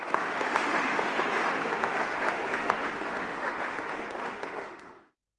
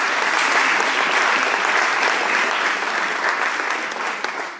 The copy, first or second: first